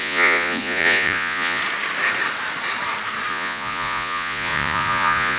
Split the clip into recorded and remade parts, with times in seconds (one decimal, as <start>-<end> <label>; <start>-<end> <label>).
0.0-1.6 remade; 1.6-3.3 recorded; 3.3-5.4 remade